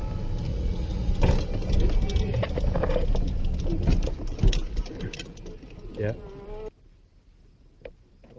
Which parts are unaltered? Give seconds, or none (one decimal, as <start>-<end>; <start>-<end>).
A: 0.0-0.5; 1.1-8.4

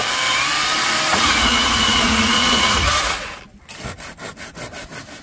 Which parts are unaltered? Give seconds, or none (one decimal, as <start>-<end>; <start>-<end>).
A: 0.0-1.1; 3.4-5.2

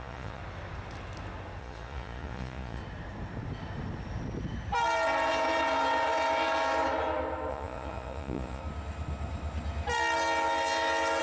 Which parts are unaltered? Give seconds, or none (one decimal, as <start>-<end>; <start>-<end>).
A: 0.4-1.6; 2.8-7.5; 8.6-11.2

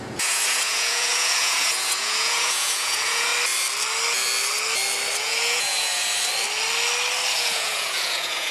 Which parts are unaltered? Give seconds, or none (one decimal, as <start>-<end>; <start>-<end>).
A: 3.3-5.2; 5.9-7.3